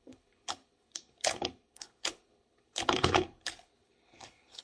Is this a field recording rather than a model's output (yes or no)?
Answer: no